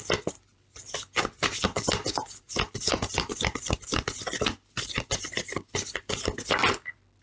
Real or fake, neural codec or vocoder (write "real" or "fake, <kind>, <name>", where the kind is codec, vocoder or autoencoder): real